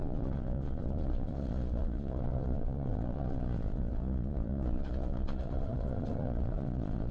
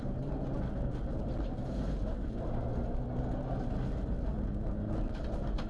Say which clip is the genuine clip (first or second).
second